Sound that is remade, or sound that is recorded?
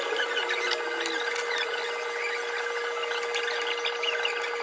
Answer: recorded